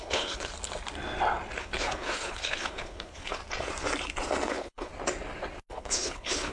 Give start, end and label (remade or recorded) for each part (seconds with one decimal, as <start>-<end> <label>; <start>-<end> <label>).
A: 0.0-0.5 remade; 0.5-1.6 recorded; 1.6-3.4 remade; 3.4-4.5 recorded; 4.5-4.9 remade; 4.9-5.7 recorded; 5.7-6.5 remade